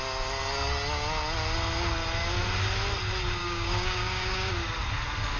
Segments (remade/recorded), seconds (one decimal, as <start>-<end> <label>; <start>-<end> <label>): 0.0-3.4 recorded; 3.4-4.5 remade; 4.5-5.4 recorded

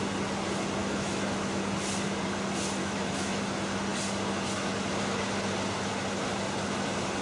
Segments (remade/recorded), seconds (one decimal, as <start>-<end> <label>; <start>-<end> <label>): 0.0-0.8 recorded; 0.8-1.6 remade; 1.6-2.8 recorded; 2.8-3.4 remade; 3.4-7.2 recorded